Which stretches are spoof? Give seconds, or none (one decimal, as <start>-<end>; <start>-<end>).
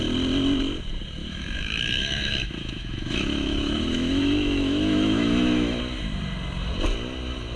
1.2-5.8